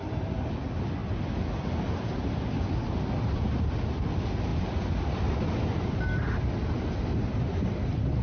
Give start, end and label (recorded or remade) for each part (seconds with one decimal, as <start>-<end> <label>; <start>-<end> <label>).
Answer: 0.0-8.2 recorded